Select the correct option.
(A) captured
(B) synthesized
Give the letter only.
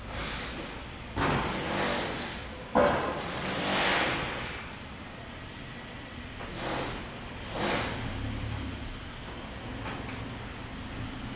A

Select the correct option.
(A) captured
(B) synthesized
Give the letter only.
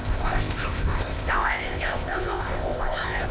B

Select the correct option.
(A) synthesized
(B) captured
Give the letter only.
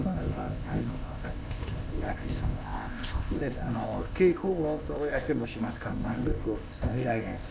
A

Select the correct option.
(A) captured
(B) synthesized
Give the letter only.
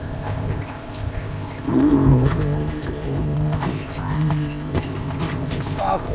B